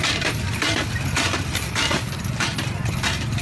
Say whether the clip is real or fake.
fake